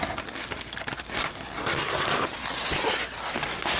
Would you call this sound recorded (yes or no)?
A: yes